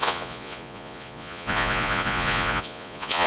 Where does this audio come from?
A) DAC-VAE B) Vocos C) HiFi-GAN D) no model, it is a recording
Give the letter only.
B